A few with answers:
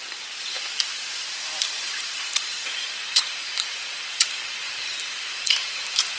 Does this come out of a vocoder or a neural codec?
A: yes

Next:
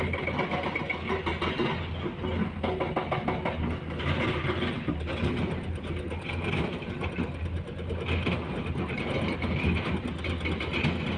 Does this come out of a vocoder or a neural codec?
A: no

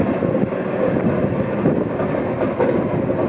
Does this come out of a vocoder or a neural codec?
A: no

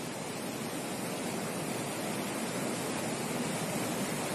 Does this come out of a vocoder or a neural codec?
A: no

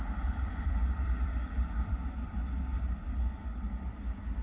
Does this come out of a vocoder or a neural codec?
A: no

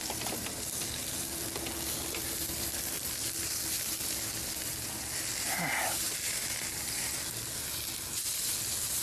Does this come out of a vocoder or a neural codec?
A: no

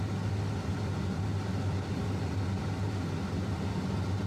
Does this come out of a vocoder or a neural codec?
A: no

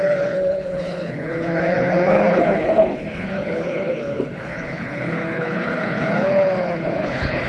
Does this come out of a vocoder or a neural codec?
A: yes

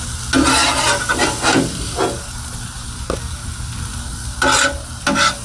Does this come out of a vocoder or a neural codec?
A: no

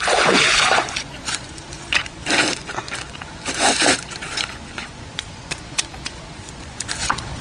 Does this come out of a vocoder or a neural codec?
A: yes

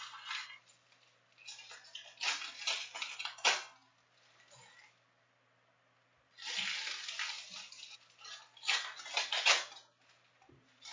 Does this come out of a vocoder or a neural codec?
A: no